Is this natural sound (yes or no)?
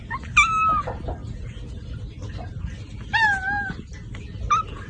yes